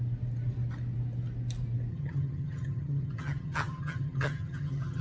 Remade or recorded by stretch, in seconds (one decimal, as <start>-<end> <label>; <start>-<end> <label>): 0.0-1.9 recorded; 1.9-5.0 remade